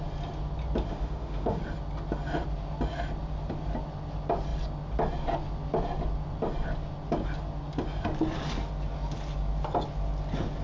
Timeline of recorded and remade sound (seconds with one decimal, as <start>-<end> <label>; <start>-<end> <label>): 0.0-0.9 recorded; 0.9-1.6 remade; 1.6-10.6 recorded